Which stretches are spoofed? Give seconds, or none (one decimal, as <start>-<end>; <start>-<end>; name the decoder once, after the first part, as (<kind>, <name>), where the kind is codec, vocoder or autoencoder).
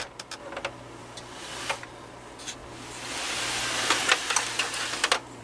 none